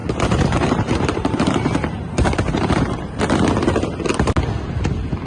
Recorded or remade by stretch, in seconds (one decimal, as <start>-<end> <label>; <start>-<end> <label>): 0.0-3.2 remade; 3.2-5.3 recorded